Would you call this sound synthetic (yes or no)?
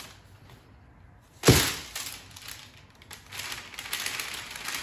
no